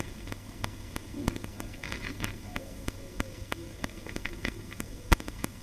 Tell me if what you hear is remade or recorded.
remade